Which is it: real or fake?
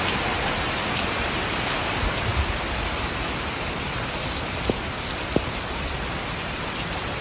real